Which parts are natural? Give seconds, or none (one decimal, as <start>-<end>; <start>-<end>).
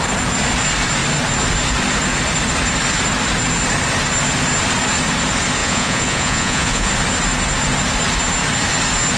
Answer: 0.0-5.6; 6.9-9.2